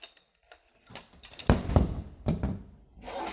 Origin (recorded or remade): remade